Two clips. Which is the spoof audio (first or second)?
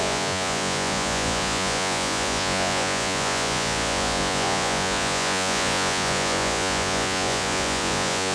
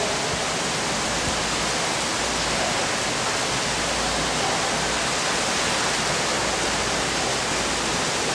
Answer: first